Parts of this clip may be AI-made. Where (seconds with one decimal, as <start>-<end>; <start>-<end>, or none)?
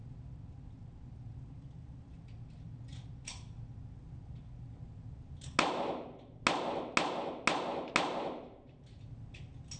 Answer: none